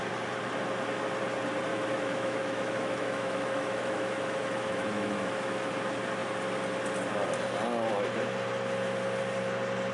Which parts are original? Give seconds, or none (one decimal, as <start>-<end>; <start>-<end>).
0.0-1.7; 5.7-9.9